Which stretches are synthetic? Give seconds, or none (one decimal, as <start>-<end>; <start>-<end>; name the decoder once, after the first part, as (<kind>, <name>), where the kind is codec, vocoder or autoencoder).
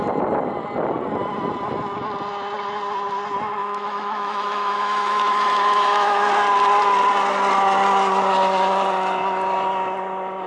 3.6-6.3 (autoencoder, DAC-VAE)